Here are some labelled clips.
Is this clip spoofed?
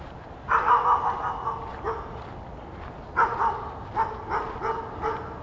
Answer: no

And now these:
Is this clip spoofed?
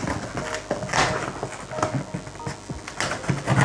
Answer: no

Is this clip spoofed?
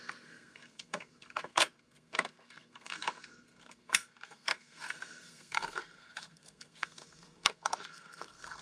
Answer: yes